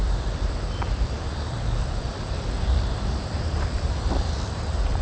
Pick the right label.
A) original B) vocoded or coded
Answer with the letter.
B